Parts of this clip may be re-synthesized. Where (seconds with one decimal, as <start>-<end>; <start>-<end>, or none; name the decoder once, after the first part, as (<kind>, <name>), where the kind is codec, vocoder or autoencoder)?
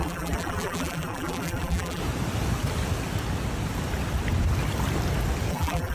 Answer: 0.0-2.0 (vocoder, BigVGAN v2); 5.5-5.9